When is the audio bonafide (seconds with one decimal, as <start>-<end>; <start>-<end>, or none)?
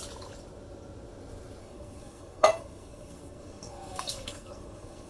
0.0-1.6